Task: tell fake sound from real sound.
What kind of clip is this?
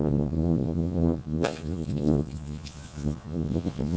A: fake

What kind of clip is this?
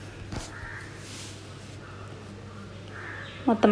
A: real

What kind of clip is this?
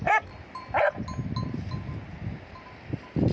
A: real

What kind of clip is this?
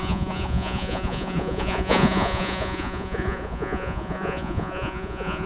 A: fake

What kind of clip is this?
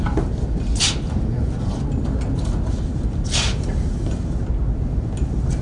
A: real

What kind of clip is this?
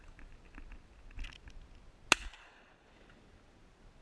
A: real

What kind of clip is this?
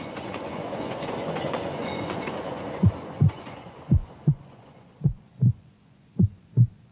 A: fake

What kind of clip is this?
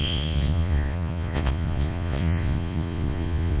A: fake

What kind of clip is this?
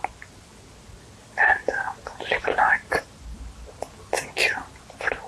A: real